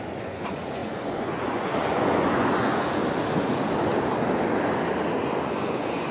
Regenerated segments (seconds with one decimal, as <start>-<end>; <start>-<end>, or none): 0.0-3.0; 5.4-6.1